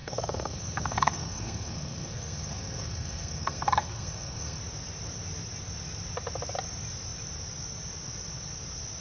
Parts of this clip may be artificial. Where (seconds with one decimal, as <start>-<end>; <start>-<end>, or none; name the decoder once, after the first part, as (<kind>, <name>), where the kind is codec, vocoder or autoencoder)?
0.0-4.6 (codec, SNAC)